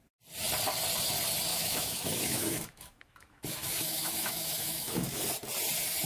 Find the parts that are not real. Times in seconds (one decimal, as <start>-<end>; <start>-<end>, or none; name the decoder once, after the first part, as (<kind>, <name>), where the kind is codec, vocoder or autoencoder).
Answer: 1.5-5.2 (autoencoder, DAC-VAE)

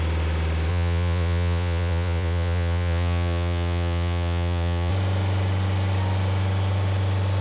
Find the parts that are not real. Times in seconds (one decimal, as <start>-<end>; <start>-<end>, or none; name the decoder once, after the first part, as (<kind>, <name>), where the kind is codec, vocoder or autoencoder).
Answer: 0.7-4.9 (vocoder, Vocos)

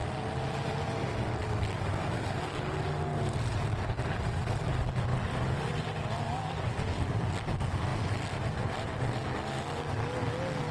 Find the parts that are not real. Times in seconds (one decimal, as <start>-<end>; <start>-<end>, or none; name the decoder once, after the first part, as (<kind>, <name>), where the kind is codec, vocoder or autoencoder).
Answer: none

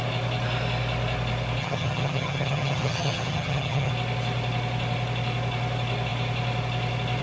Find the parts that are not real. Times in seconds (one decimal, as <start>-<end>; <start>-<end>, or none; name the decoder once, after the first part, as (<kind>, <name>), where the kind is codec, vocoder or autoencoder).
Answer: 1.6-3.9 (vocoder, HiFi-GAN)

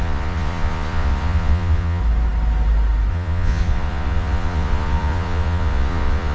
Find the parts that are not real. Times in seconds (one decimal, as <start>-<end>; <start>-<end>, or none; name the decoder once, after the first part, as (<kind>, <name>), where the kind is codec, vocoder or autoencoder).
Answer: 0.0-2.0 (vocoder, Vocos); 3.1-6.3

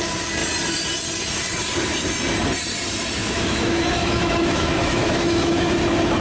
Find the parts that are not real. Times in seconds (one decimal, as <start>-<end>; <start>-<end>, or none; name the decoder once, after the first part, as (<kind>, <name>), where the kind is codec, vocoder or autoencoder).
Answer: 3.2-5.7 (autoencoder, DAC-VAE)

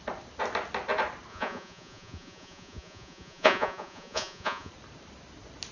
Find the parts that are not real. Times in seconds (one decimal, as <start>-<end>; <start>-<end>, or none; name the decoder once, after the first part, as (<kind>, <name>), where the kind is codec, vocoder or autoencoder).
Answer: 1.3-4.7 (vocoder, Vocos)

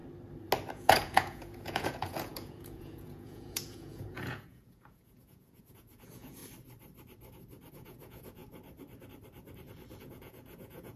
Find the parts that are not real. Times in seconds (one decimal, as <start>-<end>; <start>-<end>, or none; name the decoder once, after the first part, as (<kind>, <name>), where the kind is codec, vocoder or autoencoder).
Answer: 0.7-6.4 (vocoder, Vocos); 7.7-8.4; 10.0-11.0